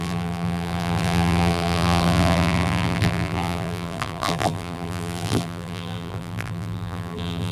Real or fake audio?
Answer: fake